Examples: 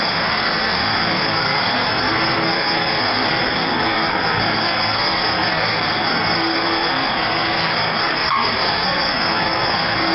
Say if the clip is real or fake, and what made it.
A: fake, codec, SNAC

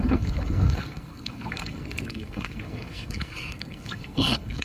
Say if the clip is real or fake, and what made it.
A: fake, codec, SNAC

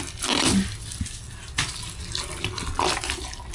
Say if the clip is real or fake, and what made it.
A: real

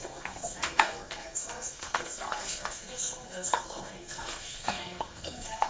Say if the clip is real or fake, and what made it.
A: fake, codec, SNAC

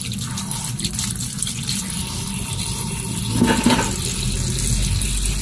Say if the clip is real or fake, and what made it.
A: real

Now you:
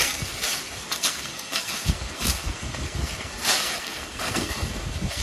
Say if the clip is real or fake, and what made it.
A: fake, codec, SNAC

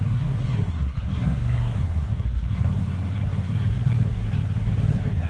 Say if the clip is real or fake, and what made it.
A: fake, codec, SNAC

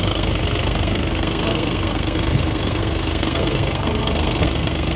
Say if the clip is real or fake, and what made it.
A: fake, codec, SNAC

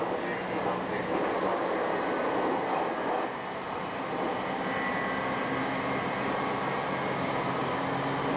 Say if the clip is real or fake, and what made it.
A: real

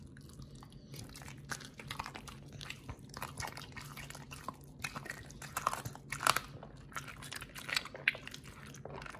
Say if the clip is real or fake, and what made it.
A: real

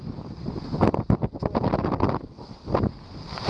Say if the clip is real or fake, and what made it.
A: real